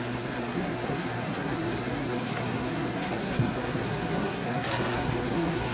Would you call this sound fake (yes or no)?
yes